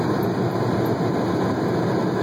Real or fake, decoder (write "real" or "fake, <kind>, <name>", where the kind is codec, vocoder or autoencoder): real